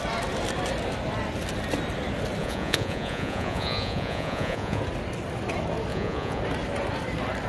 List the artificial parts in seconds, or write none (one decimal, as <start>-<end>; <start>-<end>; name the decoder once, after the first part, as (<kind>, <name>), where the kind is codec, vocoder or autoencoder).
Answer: 2.4-4.8 (vocoder, Vocos); 5.9-6.4